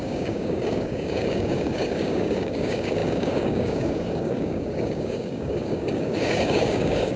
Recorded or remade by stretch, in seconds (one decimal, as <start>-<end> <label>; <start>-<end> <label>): 0.0-7.2 remade